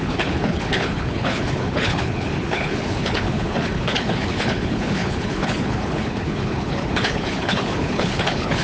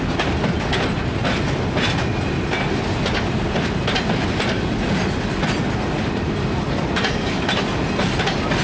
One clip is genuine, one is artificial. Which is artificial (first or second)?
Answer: first